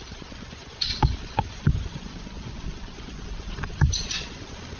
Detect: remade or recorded remade